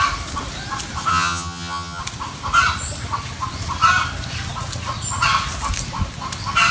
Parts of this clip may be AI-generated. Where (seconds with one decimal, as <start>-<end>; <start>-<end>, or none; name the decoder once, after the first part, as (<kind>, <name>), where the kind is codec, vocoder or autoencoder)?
1.1-2.0 (vocoder, HiFi-GAN)